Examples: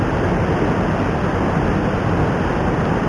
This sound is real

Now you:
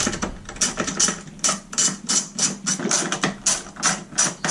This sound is real